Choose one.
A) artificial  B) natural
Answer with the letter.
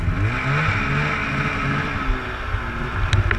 B